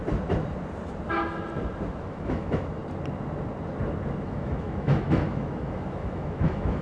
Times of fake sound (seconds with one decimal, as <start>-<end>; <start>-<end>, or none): 2.0-2.8; 4.2-6.8